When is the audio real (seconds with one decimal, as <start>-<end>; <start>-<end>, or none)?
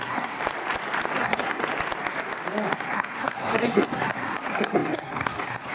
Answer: 0.4-1.2; 1.6-2.7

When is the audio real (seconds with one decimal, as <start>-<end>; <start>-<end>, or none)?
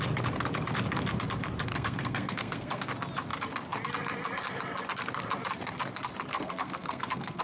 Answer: 0.0-1.7; 2.9-6.3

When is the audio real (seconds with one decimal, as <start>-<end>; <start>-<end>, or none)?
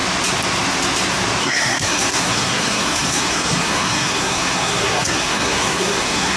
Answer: 0.0-1.4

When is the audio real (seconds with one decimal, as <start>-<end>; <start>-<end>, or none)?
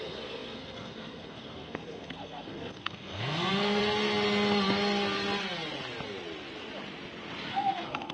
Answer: 3.8-7.5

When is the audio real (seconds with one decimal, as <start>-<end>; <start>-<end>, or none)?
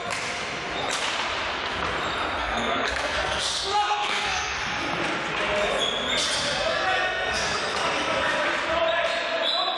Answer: 0.0-2.4; 4.6-6.7; 7.6-9.8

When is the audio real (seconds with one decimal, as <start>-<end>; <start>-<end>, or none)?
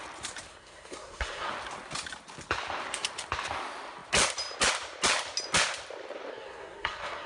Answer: 0.0-0.5; 1.5-6.3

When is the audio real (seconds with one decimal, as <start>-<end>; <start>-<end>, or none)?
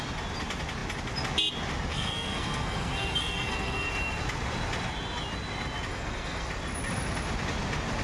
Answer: 0.0-1.9; 3.9-5.9; 6.5-8.0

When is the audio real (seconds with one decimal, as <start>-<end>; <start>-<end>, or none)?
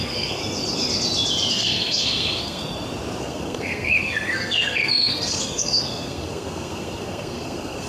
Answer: 0.4-1.5; 2.6-3.2